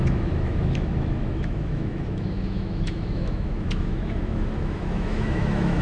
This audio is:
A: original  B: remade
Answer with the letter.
B